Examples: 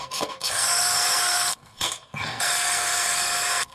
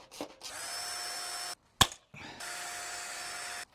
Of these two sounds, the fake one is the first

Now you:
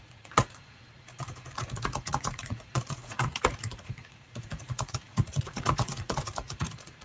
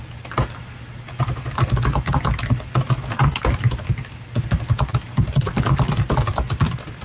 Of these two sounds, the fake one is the first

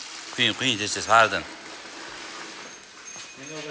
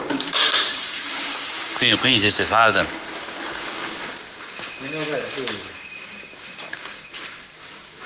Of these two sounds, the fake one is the second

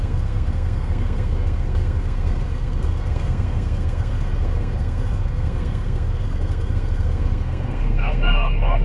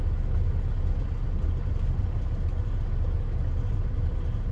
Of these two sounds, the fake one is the first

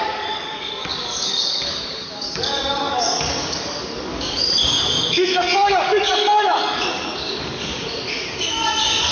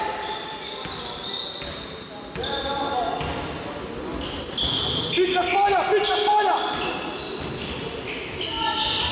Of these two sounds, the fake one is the first